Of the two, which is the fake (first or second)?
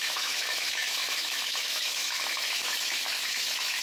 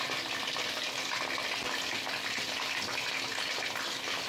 first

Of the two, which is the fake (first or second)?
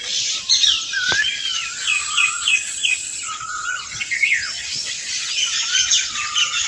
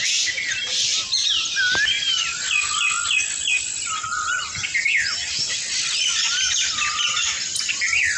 first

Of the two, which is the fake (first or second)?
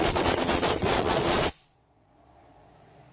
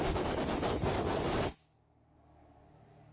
first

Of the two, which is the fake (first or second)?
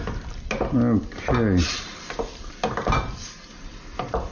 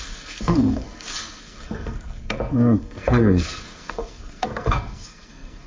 second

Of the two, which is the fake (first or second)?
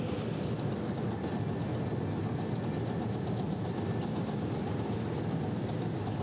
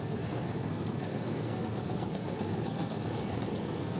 second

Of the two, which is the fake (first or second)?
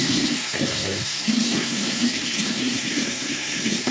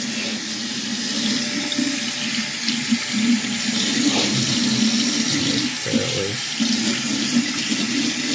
first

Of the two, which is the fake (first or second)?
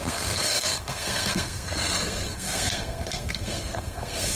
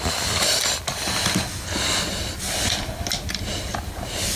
first